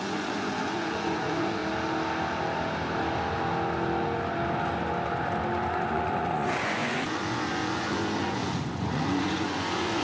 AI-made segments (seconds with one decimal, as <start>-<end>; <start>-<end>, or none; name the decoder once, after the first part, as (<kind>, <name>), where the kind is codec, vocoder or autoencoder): 0.0-1.6 (vocoder, Vocos); 5.9-10.0